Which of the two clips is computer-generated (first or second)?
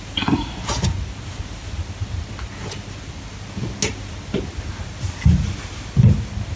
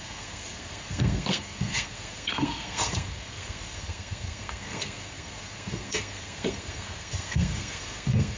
second